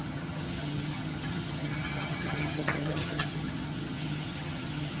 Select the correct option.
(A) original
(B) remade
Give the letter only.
B